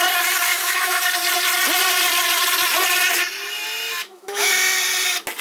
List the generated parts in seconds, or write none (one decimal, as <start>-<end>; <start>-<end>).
0.5-1.0; 4.0-4.5

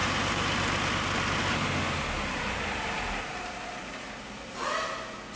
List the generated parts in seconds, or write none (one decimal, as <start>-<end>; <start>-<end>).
none